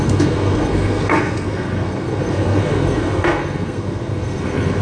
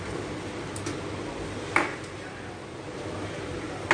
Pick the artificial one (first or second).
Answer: first